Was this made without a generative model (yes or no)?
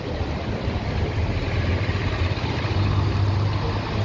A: yes